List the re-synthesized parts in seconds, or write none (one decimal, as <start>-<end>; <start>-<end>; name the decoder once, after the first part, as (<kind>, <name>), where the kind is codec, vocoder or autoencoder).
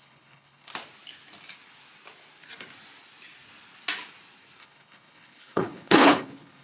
0.0-0.7 (codec, HILCodec); 4.6-6.6